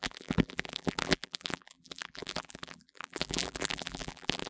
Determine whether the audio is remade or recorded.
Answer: remade